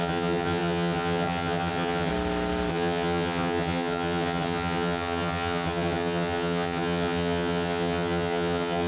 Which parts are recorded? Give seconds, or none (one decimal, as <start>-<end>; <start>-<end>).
2.1-2.7